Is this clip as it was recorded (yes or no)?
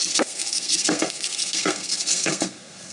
no